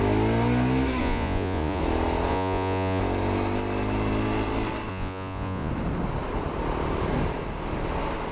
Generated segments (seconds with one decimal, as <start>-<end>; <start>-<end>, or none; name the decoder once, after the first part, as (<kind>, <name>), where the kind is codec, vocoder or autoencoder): 1.0-1.8 (vocoder, Vocos); 2.3-3.0; 4.9-5.7